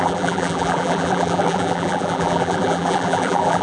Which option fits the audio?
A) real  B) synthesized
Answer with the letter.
B